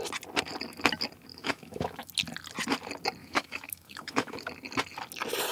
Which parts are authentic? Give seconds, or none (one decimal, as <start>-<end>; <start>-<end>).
0.0-1.3; 2.1-3.2; 4.5-5.5